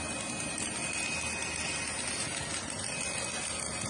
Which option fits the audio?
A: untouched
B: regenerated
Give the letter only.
A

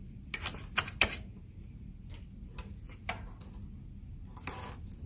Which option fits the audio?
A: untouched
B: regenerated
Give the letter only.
A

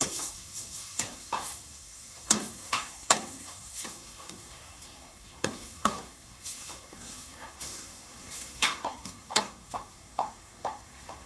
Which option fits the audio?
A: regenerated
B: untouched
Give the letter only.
A